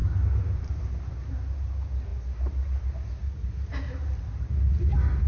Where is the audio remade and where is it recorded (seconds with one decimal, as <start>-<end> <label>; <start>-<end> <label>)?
0.0-5.3 recorded

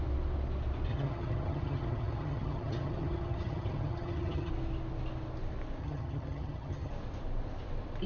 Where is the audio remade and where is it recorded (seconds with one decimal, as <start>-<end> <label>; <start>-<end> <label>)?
0.0-0.9 recorded; 0.9-4.5 remade; 4.5-5.8 recorded; 5.8-6.9 remade; 6.9-8.1 recorded